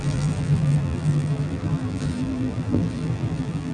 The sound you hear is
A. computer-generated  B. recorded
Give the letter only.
A